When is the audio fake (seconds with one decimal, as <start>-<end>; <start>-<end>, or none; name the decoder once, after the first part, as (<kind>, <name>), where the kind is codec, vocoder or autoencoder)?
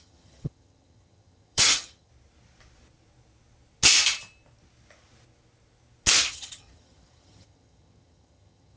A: 0.0-2.1 (vocoder, HiFi-GAN); 6.3-8.8